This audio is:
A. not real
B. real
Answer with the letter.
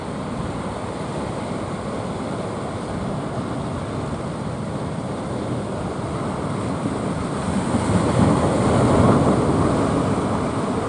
B